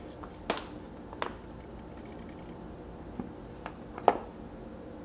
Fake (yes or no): no